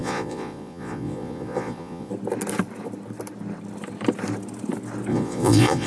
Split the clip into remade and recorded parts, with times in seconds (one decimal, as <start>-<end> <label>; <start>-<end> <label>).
0.0-2.1 remade; 2.1-5.1 recorded; 5.1-5.9 remade